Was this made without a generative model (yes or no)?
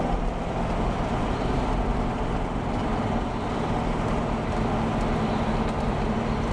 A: yes